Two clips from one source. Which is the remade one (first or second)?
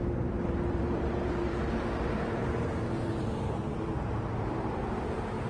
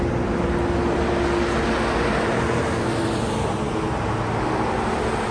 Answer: first